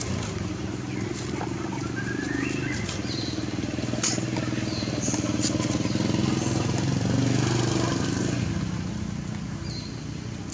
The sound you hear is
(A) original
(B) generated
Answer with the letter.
A